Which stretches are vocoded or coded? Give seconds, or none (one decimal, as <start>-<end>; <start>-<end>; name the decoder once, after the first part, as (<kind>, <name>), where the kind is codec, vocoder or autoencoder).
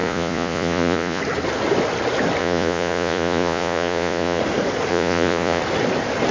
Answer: 0.0-1.2 (vocoder, Vocos); 2.4-4.4; 4.9-5.6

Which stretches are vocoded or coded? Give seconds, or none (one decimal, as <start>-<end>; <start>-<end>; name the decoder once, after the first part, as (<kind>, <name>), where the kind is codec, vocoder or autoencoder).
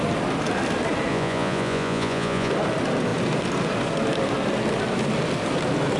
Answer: 1.1-2.5 (vocoder, Vocos)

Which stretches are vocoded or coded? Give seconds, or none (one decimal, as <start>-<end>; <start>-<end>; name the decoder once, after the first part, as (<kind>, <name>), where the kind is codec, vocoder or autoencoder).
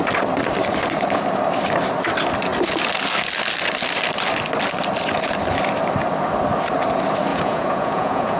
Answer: 7.3-8.4 (vocoder, Vocos)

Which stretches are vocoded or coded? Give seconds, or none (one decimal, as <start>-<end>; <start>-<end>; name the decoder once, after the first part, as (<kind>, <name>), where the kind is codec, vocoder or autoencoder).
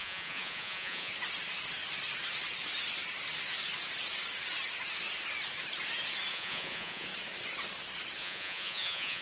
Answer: 0.0-1.1 (vocoder, Vocos); 6.3-7.1; 8.2-9.2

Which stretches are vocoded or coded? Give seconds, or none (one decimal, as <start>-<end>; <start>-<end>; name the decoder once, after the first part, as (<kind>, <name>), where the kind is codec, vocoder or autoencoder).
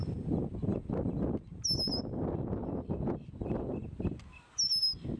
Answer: none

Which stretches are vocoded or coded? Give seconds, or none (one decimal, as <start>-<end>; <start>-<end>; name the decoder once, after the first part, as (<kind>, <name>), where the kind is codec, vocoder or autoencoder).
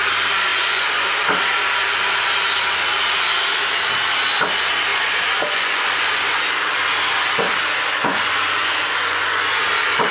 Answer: 0.5-1.1 (vocoder, Vocos); 4.9-6.4; 8.0-9.5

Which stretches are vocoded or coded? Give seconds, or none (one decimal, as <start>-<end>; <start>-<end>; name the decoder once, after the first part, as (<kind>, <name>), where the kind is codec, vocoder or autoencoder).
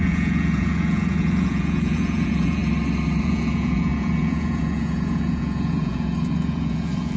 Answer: 0.0-2.6 (vocoder, Vocos); 3.2-7.2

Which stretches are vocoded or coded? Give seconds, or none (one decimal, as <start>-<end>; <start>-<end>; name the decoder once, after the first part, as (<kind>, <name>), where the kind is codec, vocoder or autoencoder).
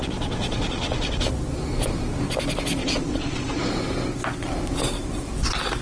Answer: 0.0-1.3 (vocoder, Vocos); 2.8-3.7